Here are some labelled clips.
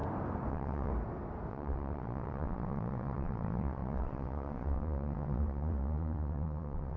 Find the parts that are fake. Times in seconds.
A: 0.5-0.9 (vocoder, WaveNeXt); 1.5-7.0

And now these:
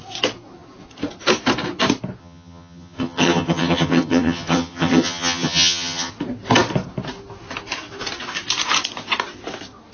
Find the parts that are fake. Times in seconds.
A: 2.2-6.1 (vocoder, HiFi-GAN)

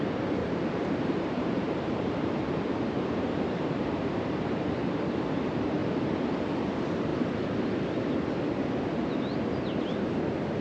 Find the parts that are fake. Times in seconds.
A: 0.4-4.6 (vocoder, BigVGAN v2)

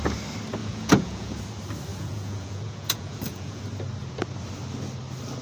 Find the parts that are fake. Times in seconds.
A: 0.6-1.4 (vocoder, Vocos); 1.9-3.6

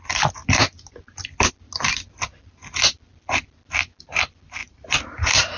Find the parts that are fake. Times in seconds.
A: 4.6-5.6 (vocoder, BigVGAN v2)